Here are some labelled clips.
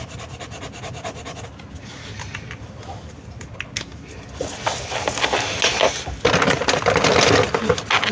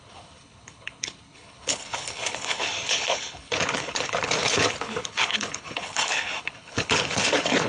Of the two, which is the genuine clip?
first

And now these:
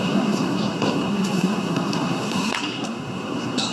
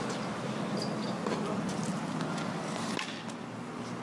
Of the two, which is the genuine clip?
second